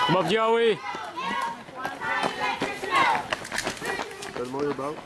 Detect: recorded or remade recorded